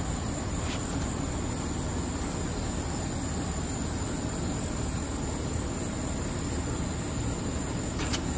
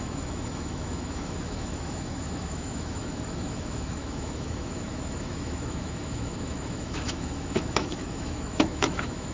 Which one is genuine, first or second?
first